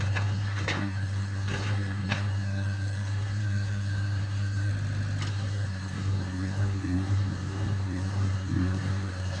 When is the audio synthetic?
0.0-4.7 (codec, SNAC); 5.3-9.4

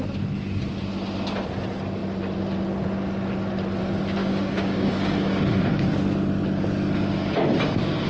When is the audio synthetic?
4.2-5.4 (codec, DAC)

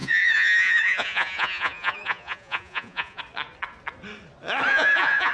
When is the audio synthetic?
0.0-3.2 (vocoder, Vocos); 4.7-5.3